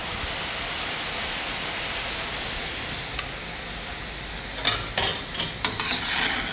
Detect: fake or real real